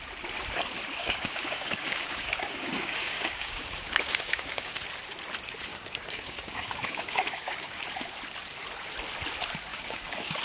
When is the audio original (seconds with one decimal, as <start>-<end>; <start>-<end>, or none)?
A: 0.0-1.0; 4.8-5.7; 7.8-9.7